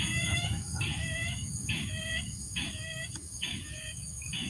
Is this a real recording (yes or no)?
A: no